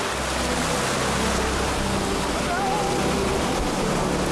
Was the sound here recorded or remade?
recorded